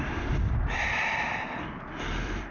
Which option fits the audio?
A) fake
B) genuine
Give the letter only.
B